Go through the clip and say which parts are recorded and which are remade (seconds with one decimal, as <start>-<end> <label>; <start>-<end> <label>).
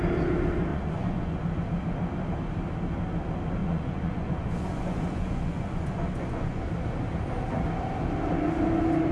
0.0-0.7 recorded; 0.7-1.4 remade; 1.4-3.6 recorded; 3.6-6.6 remade; 6.6-9.1 recorded